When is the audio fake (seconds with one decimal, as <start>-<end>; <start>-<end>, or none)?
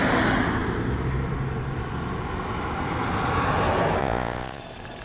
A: 4.0-4.6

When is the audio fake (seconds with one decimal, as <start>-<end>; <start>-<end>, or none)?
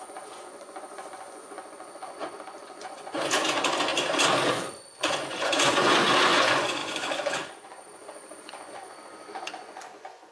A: 0.0-3.9; 4.5-10.3